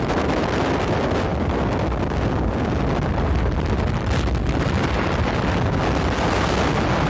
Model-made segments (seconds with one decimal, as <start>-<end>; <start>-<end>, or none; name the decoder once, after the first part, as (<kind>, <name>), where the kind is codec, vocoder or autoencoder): none